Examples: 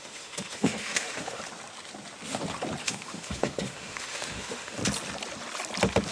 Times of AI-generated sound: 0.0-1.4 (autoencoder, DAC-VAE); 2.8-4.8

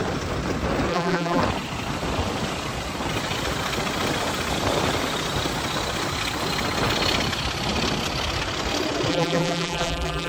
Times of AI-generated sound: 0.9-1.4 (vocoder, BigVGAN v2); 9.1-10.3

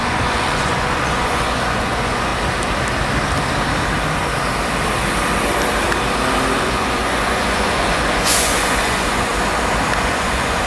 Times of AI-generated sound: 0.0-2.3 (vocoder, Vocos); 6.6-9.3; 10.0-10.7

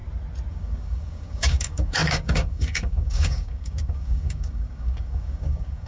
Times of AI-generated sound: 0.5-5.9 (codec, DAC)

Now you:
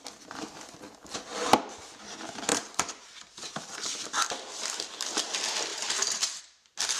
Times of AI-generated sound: 2.5-3.9 (vocoder, BigVGAN v2); 5.7-6.4

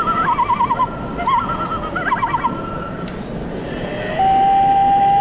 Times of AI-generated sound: none